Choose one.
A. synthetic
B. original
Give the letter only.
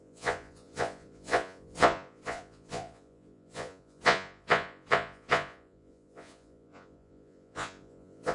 A